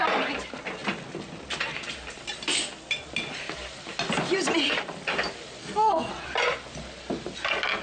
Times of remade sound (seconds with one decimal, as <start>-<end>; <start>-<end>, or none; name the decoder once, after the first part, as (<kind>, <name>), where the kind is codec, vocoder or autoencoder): 5.6-6.1 (codec, SNAC)